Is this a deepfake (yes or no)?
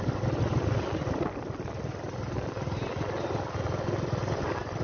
no